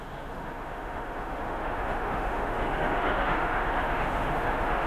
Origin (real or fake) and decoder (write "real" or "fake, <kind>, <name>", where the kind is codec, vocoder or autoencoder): fake, autoencoder, DAC-VAE